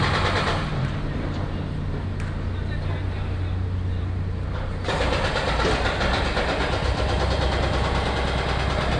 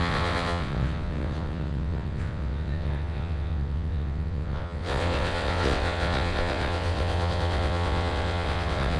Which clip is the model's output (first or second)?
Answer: second